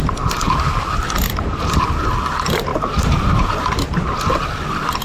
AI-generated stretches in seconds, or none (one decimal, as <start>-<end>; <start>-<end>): 2.7-4.2